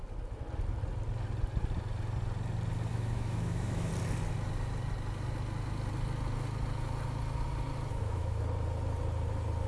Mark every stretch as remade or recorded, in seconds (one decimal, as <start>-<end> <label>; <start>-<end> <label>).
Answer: 0.0-2.9 recorded; 2.9-3.9 remade; 3.9-7.9 recorded; 7.9-8.4 remade; 8.4-9.7 recorded